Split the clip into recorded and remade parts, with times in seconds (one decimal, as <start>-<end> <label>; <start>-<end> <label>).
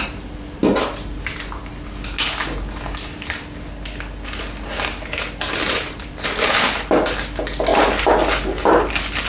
0.0-9.3 recorded